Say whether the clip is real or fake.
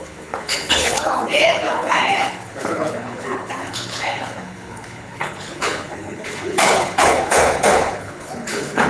fake